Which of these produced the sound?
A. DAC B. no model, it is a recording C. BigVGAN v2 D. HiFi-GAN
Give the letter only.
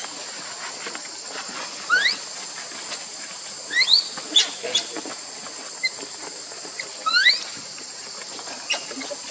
B